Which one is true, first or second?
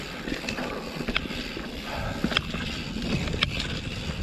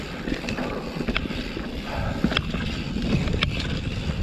first